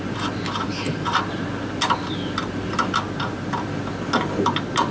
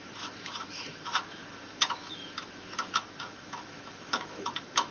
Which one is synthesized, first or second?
second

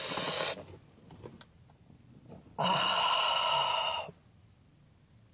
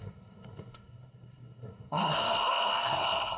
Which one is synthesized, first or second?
second